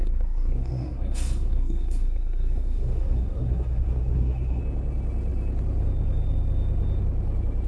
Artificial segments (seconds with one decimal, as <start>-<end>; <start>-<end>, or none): 0.0-4.6